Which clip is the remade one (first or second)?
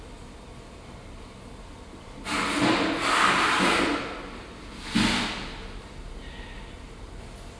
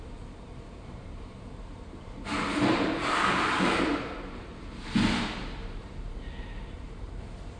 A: second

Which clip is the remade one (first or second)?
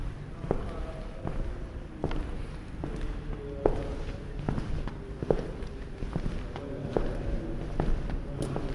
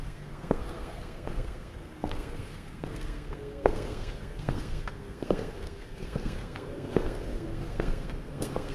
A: second